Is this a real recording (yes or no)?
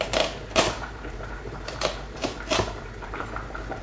no